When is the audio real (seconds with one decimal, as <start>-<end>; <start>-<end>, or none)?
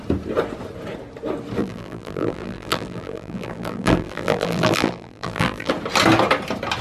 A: 0.0-1.6; 5.7-6.8